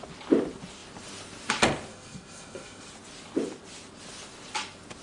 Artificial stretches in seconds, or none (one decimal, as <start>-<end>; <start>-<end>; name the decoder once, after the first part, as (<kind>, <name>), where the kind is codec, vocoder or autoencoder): 1.9-2.9 (codec, SNAC)

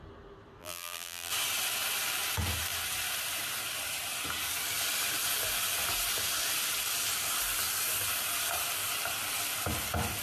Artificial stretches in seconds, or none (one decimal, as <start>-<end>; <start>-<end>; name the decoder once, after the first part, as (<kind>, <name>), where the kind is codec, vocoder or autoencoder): 0.6-1.3 (vocoder, BigVGAN v2)

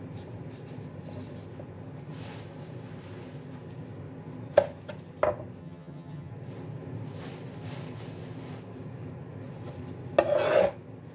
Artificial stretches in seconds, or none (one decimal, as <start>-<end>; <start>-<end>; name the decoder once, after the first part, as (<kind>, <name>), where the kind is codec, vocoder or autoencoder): 5.6-6.3 (vocoder, HiFi-GAN)